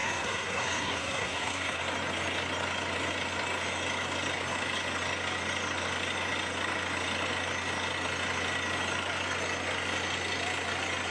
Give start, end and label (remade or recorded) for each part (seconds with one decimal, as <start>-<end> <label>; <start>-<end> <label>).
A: 0.0-1.8 remade; 1.8-11.1 recorded